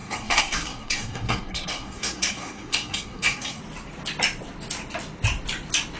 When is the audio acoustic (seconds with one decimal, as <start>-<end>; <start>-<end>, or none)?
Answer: 3.6-6.0